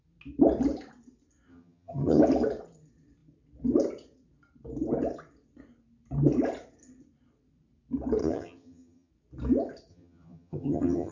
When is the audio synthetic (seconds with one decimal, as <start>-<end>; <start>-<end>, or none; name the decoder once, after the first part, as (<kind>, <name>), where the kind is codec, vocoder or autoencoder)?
1.5-2.2 (vocoder, HiFi-GAN); 8.2-9.1; 9.9-11.1

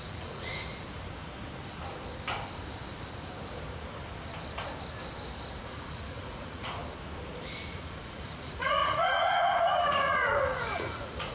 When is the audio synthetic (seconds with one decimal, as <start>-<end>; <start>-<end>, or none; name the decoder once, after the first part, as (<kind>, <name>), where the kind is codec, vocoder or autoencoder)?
0.0-0.6 (vocoder, Vocos); 5.6-6.8; 7.7-11.3

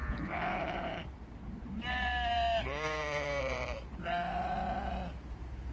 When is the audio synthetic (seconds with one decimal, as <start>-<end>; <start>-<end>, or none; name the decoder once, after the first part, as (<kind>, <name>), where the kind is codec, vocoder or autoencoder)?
0.0-4.6 (vocoder, BigVGAN v2); 5.2-5.7